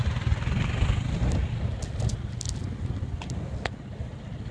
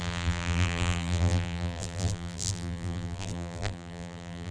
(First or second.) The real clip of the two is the first